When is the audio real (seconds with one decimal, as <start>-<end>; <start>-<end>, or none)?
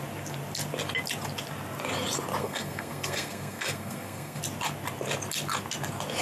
0.0-2.4; 4.4-6.2